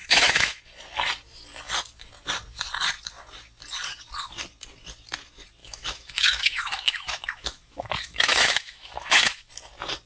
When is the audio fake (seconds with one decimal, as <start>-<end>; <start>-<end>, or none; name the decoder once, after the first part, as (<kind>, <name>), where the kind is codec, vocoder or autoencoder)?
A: 0.0-0.6 (autoencoder, DAC-VAE); 5.6-9.5